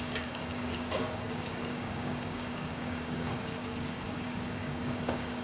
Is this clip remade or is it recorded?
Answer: remade